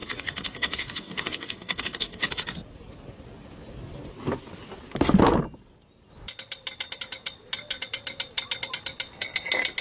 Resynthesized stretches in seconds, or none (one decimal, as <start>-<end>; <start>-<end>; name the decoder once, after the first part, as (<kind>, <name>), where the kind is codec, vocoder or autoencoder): 0.0-2.3 (codec, SNAC)